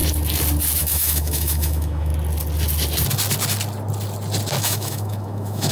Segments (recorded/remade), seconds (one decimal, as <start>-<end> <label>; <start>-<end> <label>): 0.0-0.8 recorded; 0.8-2.1 remade; 2.1-4.6 recorded; 4.6-5.7 remade